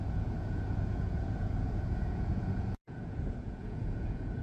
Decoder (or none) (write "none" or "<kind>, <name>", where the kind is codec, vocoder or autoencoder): vocoder, Vocos